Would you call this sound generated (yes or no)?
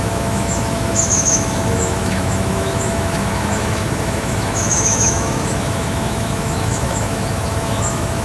yes